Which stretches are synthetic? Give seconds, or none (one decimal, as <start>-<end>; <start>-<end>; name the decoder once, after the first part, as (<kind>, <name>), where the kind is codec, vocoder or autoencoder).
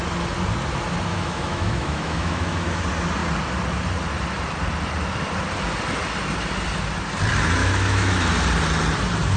1.1-2.8 (autoencoder, DAC-VAE); 7.6-8.2